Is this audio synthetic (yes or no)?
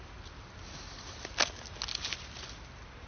no